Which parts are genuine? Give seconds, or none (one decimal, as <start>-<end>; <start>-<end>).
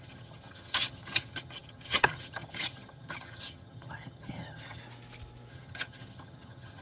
4.8-5.5